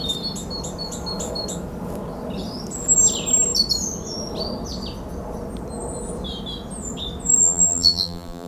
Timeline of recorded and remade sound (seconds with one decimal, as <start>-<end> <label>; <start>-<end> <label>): 0.0-7.4 recorded; 7.4-8.5 remade